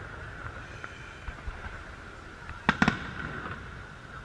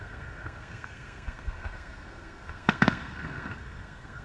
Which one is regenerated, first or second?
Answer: second